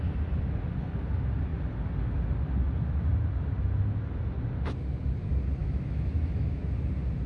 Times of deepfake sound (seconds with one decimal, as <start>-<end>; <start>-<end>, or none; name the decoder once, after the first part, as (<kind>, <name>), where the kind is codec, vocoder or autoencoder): 5.6-6.6 (autoencoder, DAC-VAE)